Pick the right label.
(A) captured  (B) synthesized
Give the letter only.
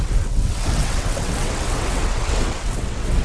B